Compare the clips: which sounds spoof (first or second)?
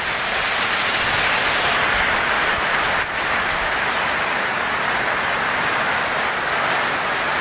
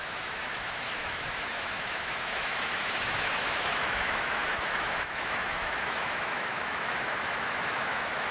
second